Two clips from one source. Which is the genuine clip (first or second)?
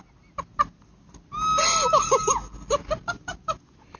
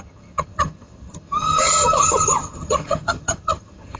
first